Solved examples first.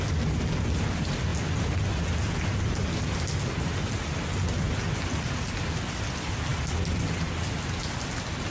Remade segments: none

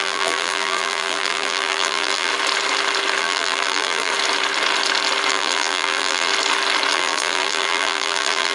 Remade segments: 0.0-2.3 (vocoder, BigVGAN v2); 3.2-4.1; 5.3-6.3; 6.9-8.5

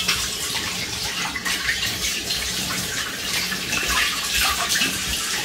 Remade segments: 0.0-5.4 (vocoder, BigVGAN v2)

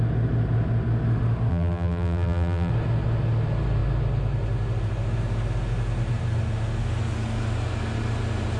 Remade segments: 1.5-2.7 (vocoder, BigVGAN v2)

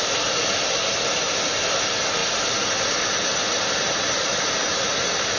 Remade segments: 3.3-4.9 (vocoder, BigVGAN v2)

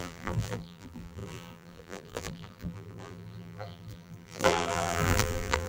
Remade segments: 0.0-5.7 (vocoder, BigVGAN v2)

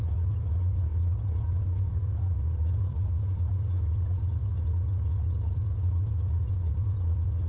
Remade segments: 0.0-4.4 (vocoder, BigVGAN v2); 5.5-7.5

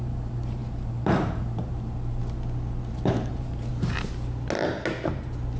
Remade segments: 0.0-2.2 (vocoder, BigVGAN v2); 3.3-3.7